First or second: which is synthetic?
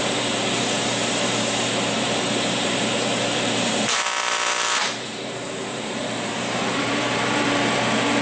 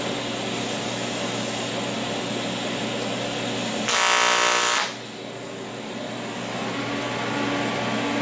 first